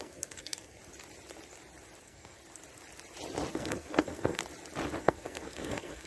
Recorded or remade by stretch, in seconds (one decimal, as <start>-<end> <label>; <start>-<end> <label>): 0.0-0.8 remade; 0.8-2.0 recorded; 2.0-2.4 remade; 2.4-3.5 recorded; 3.5-4.4 remade; 4.4-5.0 recorded; 5.0-6.1 remade